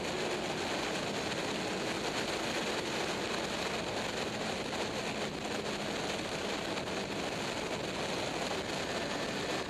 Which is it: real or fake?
real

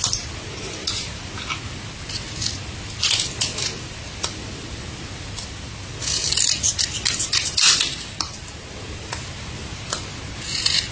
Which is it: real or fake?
real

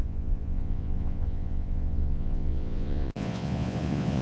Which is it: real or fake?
fake